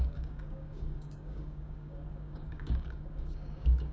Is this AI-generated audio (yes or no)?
yes